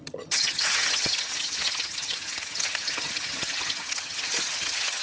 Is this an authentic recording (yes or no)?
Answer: no